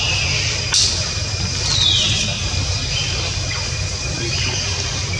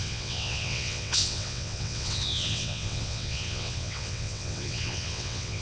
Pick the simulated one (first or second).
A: second